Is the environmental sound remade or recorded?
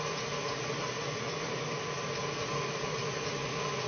remade